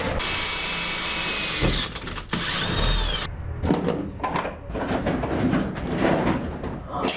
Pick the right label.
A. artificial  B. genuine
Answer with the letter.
B